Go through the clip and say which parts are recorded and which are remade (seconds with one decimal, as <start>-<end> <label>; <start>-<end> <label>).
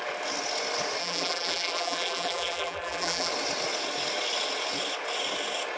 0.0-1.0 recorded; 1.0-3.3 remade; 3.3-5.8 recorded